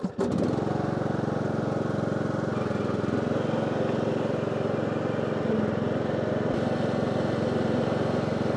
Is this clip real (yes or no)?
yes